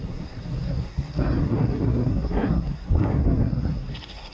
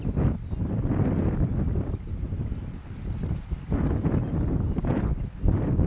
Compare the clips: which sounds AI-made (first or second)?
first